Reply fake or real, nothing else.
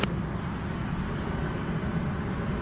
real